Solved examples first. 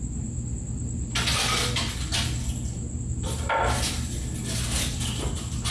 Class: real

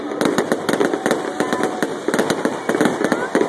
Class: real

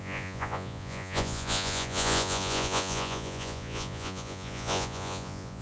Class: fake